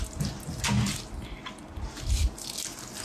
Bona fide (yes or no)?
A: yes